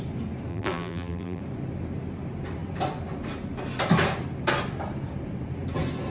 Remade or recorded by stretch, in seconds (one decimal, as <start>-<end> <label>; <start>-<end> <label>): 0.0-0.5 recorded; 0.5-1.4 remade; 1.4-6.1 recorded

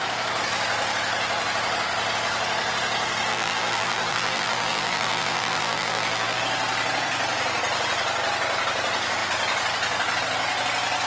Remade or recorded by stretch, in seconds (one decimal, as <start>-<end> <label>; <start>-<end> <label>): 0.0-3.3 recorded; 3.3-6.4 remade; 6.4-11.1 recorded

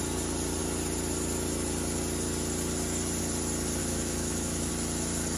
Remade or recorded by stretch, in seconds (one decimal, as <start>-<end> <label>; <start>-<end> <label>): 0.0-3.8 recorded; 3.8-4.7 remade; 4.7-5.4 recorded

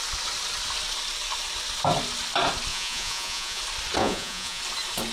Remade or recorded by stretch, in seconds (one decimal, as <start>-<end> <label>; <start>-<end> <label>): 0.0-2.7 recorded; 2.7-3.6 remade; 3.6-4.0 recorded; 4.0-4.6 remade; 4.6-5.1 recorded

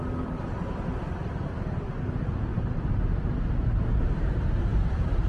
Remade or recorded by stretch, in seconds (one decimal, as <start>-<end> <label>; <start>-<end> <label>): 0.0-2.5 recorded; 2.5-5.3 remade

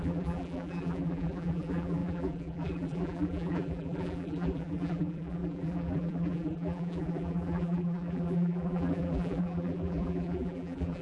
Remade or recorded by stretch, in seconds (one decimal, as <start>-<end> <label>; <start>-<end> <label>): 0.0-11.0 remade

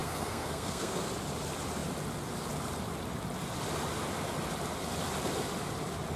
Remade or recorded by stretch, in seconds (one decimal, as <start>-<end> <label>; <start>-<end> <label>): 0.0-1.1 remade; 1.1-6.2 recorded